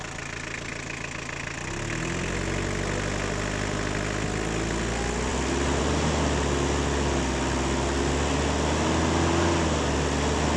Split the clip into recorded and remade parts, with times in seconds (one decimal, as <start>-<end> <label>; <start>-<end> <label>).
0.0-10.6 recorded